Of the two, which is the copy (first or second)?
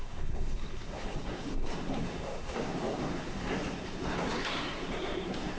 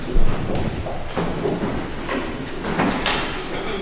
first